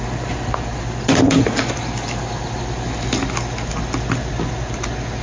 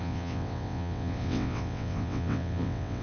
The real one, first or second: first